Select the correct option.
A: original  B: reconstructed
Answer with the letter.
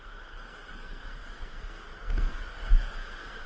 B